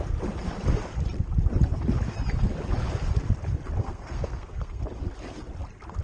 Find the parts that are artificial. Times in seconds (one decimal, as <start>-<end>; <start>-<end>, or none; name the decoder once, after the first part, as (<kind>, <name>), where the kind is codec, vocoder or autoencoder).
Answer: 3.8-4.8 (codec, SNAC)